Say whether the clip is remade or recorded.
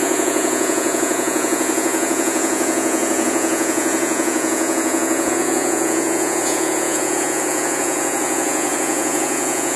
remade